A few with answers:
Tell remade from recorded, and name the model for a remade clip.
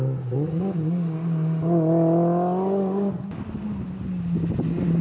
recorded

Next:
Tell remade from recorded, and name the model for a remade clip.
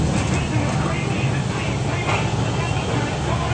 recorded